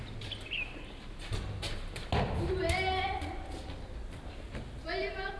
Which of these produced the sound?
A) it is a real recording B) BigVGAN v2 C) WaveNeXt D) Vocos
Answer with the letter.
A